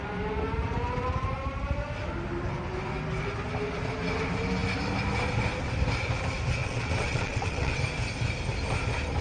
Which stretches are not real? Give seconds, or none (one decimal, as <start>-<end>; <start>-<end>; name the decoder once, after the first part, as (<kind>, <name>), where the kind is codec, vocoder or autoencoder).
6.6-7.8 (vocoder, WaveNeXt)